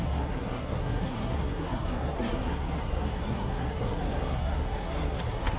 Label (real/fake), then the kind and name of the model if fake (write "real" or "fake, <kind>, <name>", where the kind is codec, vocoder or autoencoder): fake, codec, SNAC